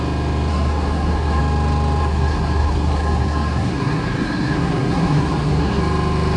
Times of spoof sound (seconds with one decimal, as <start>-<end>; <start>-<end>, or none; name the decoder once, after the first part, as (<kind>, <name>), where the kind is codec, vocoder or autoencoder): 0.5-1.4 (codec, SNAC); 2.0-5.8